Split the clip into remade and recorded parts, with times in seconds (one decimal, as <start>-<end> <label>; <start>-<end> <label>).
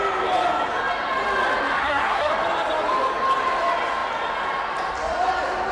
0.0-1.8 recorded; 1.8-2.3 remade; 2.3-5.7 recorded